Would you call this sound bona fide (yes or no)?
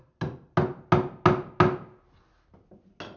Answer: yes